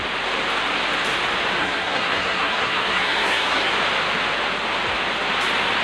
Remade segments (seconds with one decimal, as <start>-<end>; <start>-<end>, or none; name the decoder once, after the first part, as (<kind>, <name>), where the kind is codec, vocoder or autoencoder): 1.6-3.7 (codec, SNAC)